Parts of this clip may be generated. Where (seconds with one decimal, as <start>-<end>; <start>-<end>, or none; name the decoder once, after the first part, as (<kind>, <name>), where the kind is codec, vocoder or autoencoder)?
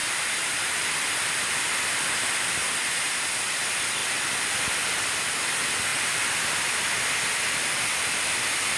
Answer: 0.0-0.8 (vocoder, BigVGAN v2)